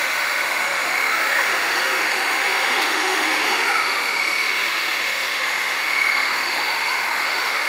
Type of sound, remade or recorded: remade